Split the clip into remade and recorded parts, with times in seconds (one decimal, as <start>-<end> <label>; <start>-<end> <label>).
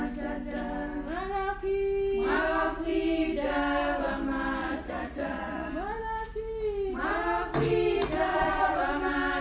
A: 0.0-4.6 recorded; 4.6-5.7 remade; 5.7-8.3 recorded; 8.3-9.0 remade; 9.0-9.4 recorded